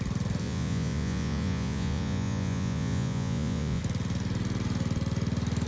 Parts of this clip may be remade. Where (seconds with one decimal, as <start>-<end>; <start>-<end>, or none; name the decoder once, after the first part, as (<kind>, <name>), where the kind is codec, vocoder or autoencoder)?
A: 0.4-3.8 (vocoder, Vocos)